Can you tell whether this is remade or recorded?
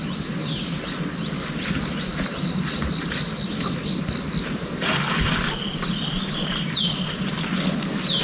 recorded